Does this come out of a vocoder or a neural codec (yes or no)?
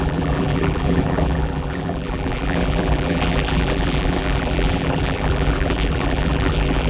yes